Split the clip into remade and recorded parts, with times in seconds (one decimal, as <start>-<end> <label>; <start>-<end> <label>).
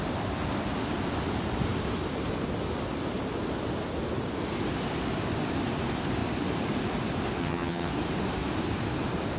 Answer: 0.0-7.4 recorded; 7.4-7.9 remade; 7.9-9.4 recorded